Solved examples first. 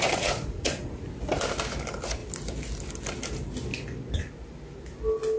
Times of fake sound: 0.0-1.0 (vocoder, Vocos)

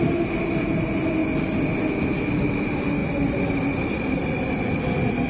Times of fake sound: 3.0-4.5 (vocoder, BigVGAN v2)

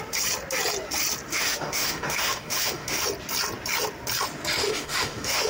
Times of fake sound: 1.3-3.0 (autoencoder, DAC-VAE); 4.6-5.5

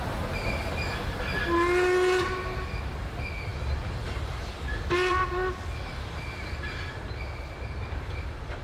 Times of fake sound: none

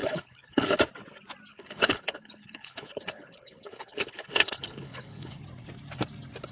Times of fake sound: 0.0-0.8 (codec, HILCodec); 1.5-5.4